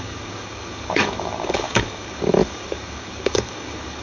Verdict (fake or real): fake